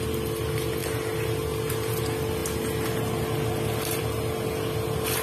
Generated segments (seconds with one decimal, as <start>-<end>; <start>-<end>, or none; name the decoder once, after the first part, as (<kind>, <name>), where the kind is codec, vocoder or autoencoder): none